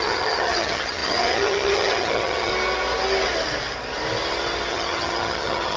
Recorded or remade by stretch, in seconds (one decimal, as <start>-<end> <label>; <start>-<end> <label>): 0.0-2.5 remade; 2.5-4.7 recorded; 4.7-5.8 remade